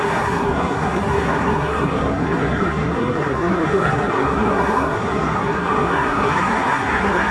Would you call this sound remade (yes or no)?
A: yes